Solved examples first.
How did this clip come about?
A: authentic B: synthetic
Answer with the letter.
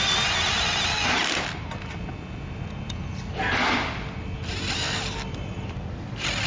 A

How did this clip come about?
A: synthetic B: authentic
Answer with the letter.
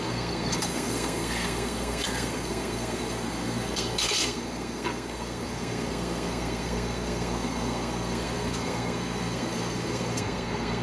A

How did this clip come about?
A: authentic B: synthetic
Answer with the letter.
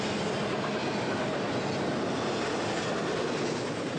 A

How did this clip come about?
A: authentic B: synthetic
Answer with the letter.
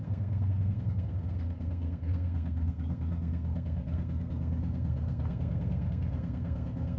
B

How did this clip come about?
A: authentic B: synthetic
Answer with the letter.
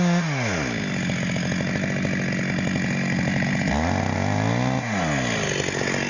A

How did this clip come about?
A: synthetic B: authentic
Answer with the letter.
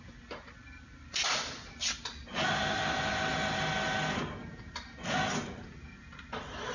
B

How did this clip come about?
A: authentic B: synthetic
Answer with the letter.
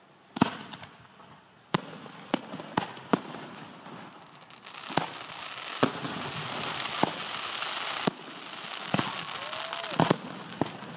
A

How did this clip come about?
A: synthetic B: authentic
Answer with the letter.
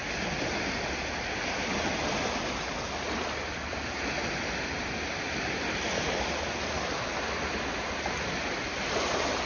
B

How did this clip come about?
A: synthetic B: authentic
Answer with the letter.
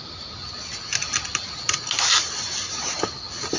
B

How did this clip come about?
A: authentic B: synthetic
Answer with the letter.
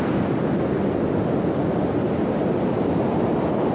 A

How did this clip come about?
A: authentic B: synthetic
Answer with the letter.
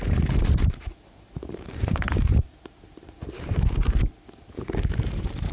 B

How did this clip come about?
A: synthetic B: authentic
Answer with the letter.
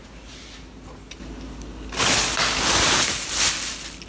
B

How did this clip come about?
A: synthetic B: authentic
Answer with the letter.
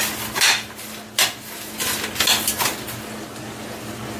B